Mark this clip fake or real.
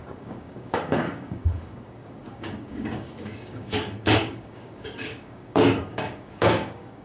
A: fake